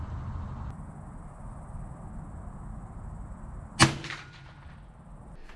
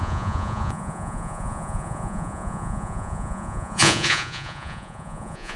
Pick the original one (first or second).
first